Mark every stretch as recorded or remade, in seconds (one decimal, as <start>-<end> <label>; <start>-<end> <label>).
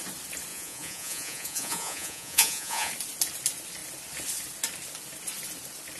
0.0-0.5 recorded; 0.5-2.9 remade; 2.9-6.0 recorded